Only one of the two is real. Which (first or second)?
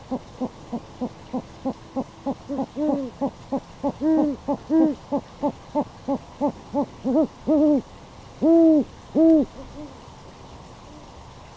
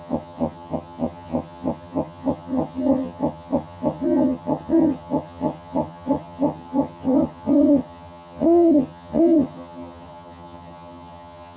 first